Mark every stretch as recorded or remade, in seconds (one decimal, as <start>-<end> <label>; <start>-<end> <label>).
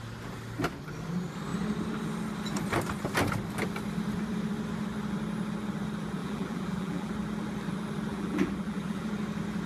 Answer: 0.0-6.2 recorded; 6.2-7.1 remade; 7.1-8.1 recorded; 8.1-9.1 remade; 9.1-9.7 recorded